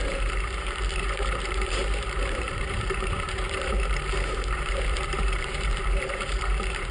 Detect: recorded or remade remade